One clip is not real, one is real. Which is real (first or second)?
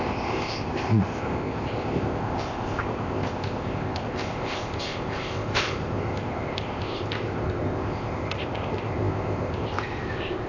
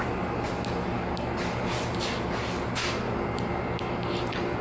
second